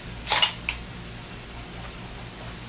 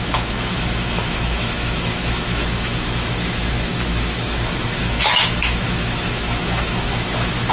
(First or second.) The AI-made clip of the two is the second